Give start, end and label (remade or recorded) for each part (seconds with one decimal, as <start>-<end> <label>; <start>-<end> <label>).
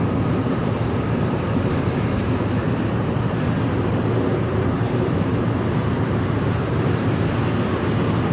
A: 0.0-0.6 recorded; 0.6-3.0 remade; 3.0-4.3 recorded; 4.3-7.4 remade; 7.4-8.3 recorded